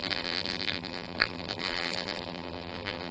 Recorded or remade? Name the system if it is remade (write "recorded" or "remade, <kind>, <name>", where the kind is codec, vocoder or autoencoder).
remade, vocoder, BigVGAN v2